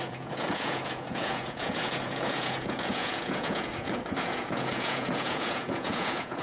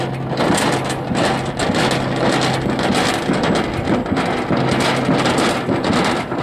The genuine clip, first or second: second